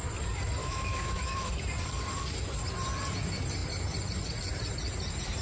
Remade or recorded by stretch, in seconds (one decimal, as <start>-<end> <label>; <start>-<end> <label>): 0.0-0.6 recorded; 0.6-1.5 remade; 1.5-5.4 recorded